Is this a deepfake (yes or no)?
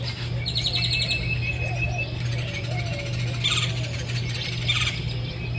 no